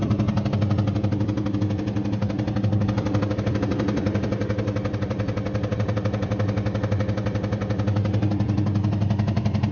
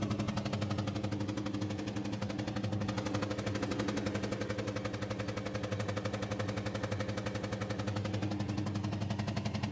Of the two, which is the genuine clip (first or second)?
second